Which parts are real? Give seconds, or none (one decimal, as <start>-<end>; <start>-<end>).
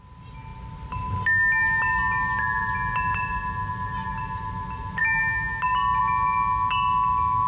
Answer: 0.0-7.5